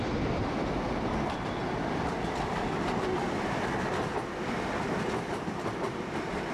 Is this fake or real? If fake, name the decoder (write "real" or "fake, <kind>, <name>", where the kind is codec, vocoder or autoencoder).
fake, vocoder, BigVGAN v2